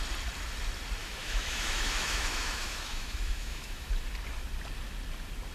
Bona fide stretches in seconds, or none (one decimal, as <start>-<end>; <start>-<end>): 0.0-1.0; 3.9-5.5